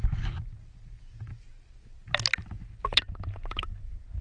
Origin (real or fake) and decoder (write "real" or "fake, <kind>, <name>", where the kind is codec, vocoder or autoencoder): real